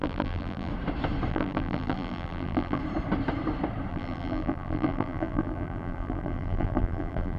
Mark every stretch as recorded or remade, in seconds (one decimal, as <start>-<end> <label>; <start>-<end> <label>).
0.0-0.7 remade; 0.7-1.3 recorded; 1.3-2.8 remade; 2.8-3.9 recorded; 3.9-7.4 remade